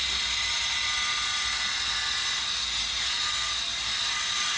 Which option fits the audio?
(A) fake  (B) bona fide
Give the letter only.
B